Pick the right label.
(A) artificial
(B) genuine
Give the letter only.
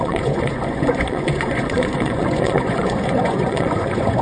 A